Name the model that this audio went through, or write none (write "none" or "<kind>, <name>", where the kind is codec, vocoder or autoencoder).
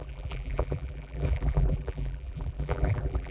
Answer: vocoder, BigVGAN v2